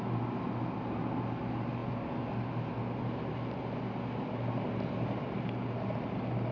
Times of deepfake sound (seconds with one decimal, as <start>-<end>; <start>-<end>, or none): none